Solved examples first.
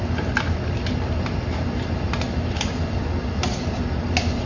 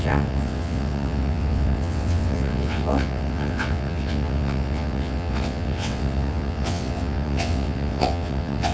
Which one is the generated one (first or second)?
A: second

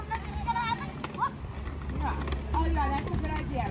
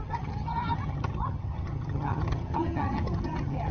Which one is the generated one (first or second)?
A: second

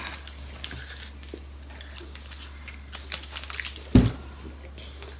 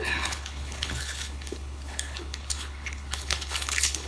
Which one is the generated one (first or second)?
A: second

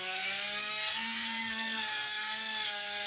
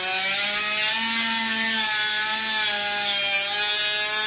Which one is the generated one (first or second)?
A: first